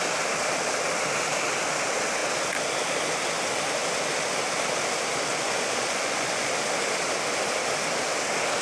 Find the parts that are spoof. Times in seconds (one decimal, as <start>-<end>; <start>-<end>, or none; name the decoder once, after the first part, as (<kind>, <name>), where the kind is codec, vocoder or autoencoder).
5.3-6.5 (vocoder, Vocos)